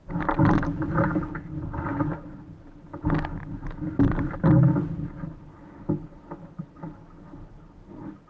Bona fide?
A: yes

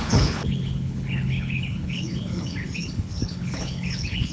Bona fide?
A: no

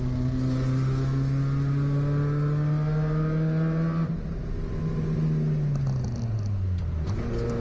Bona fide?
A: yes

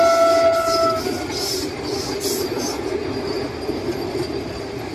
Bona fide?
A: yes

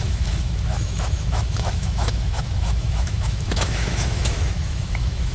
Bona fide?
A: no